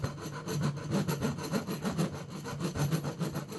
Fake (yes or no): no